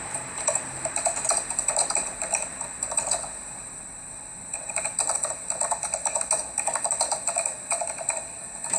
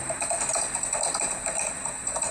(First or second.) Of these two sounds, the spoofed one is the first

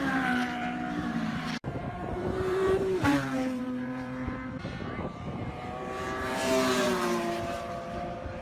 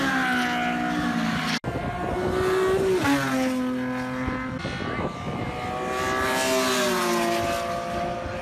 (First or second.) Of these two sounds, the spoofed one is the first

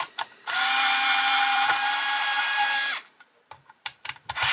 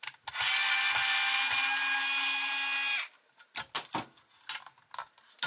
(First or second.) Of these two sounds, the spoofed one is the first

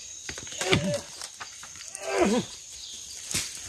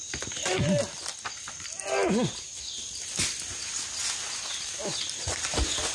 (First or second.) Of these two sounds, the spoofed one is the first